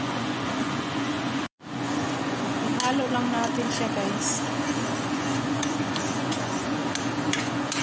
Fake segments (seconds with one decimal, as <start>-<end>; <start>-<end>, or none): 0.0-2.7; 4.3-6.8; 7.3-7.8